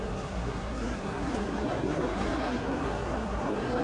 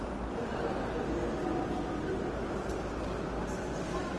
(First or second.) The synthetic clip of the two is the first